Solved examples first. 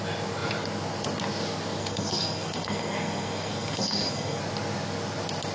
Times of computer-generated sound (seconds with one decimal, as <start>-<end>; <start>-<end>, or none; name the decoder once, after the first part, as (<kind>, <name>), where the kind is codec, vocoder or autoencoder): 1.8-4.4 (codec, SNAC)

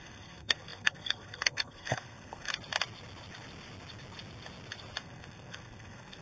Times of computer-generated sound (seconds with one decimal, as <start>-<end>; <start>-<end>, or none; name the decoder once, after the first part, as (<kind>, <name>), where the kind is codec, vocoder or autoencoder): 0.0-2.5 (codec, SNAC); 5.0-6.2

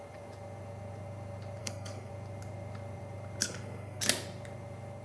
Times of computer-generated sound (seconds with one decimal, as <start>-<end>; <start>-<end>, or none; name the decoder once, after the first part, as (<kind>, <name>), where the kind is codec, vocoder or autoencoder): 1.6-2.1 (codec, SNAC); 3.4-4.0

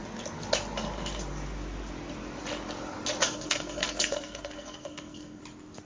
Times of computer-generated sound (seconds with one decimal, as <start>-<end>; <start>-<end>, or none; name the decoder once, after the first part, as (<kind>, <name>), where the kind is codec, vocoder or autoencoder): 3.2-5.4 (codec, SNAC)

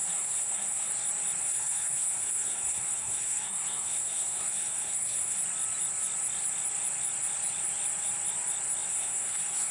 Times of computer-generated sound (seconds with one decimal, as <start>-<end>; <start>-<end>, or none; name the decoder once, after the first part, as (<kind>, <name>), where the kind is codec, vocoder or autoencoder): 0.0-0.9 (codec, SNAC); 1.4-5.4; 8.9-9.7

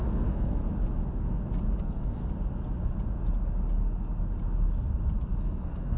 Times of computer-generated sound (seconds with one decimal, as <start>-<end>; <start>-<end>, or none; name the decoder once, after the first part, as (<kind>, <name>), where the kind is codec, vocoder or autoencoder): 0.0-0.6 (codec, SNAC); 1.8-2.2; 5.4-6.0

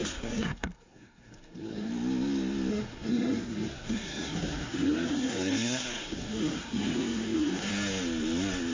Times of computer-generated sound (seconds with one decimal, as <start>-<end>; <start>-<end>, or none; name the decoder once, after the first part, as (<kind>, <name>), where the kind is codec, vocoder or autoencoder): 0.0-1.9 (codec, SNAC); 2.7-7.7

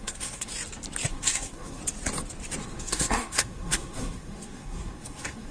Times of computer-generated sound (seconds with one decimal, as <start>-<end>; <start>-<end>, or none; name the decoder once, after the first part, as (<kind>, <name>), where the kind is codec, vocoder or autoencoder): 0.0-0.5 (codec, SNAC); 1.1-1.8; 2.6-5.5